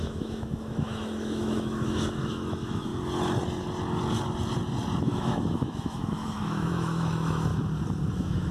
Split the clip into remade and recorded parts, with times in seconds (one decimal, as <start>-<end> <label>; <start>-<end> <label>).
0.0-2.9 remade; 2.9-5.0 recorded; 5.0-7.5 remade; 7.5-8.1 recorded; 8.1-8.5 remade

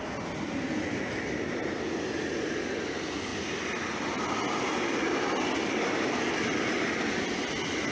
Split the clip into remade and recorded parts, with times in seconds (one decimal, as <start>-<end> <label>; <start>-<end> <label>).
0.0-7.9 recorded

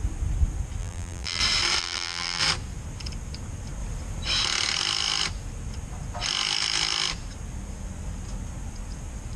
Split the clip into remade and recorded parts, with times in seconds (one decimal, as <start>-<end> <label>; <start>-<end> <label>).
0.0-0.8 recorded; 0.8-1.4 remade; 1.4-1.8 recorded; 1.8-2.4 remade; 2.4-9.4 recorded

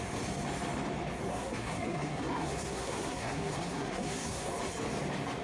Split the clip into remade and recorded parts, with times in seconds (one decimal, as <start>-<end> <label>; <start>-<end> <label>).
0.0-1.3 recorded; 1.3-4.5 remade; 4.5-5.4 recorded

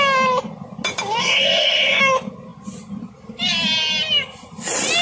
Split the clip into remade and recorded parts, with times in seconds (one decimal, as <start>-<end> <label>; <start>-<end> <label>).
0.0-1.2 recorded; 1.2-2.0 remade; 2.0-5.0 recorded

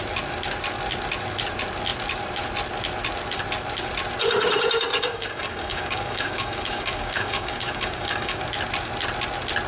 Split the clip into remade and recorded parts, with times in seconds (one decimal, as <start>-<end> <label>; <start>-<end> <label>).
0.0-4.9 recorded; 4.9-8.4 remade; 8.4-9.7 recorded